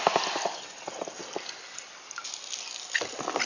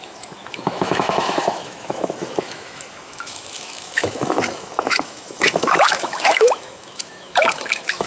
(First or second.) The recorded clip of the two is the first